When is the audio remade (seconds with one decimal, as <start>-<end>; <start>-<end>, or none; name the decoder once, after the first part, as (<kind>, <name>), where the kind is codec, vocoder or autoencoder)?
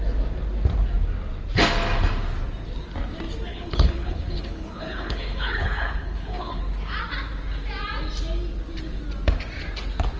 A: 3.5-6.6 (codec, HILCodec)